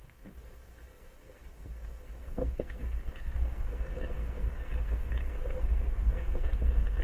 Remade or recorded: remade